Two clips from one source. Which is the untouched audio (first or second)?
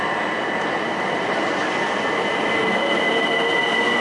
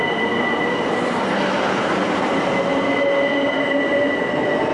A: first